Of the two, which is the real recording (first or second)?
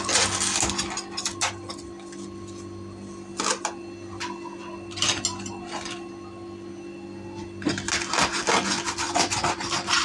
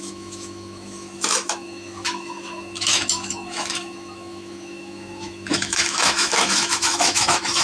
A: first